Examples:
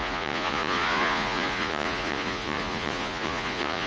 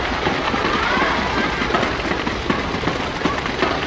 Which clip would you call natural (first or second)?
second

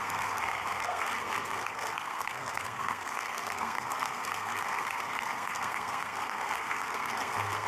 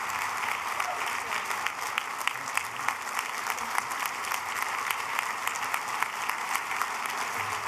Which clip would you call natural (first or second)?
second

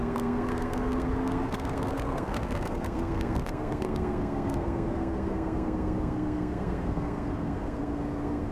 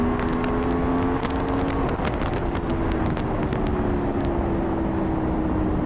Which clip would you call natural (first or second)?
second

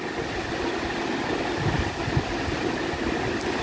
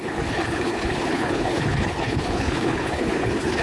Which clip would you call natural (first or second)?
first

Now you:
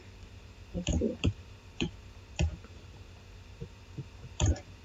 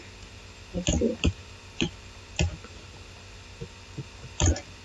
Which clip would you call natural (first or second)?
second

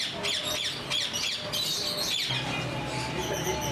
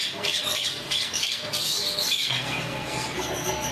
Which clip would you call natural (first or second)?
first